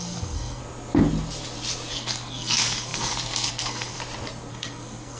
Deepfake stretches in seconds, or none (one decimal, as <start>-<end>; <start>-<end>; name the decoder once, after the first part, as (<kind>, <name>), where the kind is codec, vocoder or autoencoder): 0.0-0.6 (codec, SNAC); 1.9-4.0; 4.5-5.2